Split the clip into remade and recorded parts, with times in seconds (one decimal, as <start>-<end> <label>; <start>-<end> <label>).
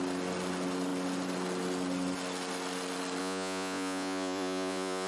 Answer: 0.0-3.2 recorded; 3.2-5.1 remade